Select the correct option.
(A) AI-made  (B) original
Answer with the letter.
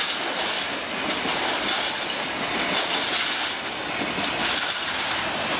B